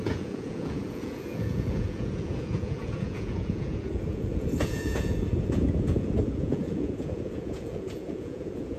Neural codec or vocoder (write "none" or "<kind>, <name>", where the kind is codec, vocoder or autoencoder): vocoder, Vocos